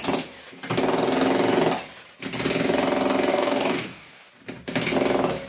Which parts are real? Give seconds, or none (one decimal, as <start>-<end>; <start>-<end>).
0.0-3.3; 4.3-5.5